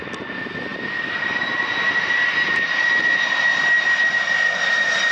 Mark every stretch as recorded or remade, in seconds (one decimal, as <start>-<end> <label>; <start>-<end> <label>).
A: 0.0-5.1 recorded